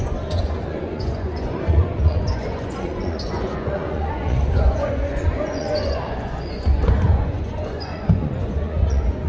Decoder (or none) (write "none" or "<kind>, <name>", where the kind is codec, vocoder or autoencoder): vocoder, Vocos